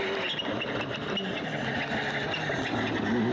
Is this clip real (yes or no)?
yes